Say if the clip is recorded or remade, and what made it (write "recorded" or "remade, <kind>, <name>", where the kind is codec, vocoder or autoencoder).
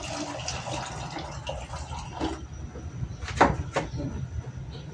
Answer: recorded